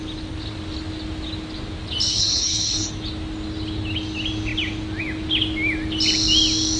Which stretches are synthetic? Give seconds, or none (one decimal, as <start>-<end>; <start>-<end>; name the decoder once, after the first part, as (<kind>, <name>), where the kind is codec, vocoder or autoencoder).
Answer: 2.1-2.9 (codec, HILCodec)